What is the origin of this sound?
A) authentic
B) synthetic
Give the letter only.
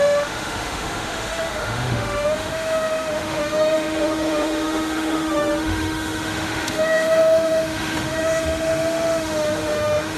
B